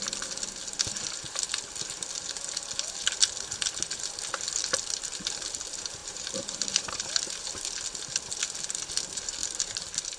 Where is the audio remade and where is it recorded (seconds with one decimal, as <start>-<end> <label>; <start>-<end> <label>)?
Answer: 0.0-6.0 recorded; 6.0-7.3 remade; 7.3-9.4 recorded; 9.4-10.2 remade